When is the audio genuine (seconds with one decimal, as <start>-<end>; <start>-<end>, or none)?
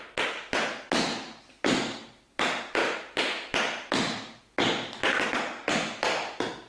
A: 0.0-2.8; 4.4-6.7